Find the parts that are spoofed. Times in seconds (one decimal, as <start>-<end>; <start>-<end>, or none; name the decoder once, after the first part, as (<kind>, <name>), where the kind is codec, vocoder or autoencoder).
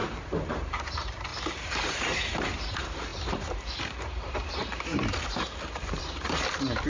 0.0-6.9 (vocoder, BigVGAN v2)